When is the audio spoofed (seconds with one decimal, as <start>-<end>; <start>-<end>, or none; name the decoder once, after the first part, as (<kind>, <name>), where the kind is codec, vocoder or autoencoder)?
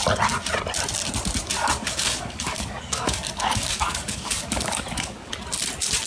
1.6-5.3 (codec, DAC)